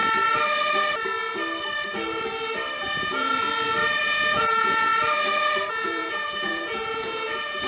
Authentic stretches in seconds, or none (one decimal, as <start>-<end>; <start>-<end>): 0.0-2.8; 3.3-4.0; 4.9-5.7